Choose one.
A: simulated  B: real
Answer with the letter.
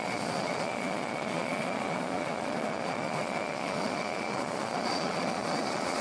A